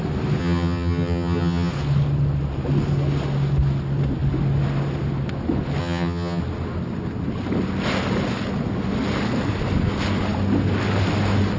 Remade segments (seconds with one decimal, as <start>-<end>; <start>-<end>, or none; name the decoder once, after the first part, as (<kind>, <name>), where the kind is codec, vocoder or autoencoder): 0.4-1.7 (vocoder, HiFi-GAN); 5.8-6.4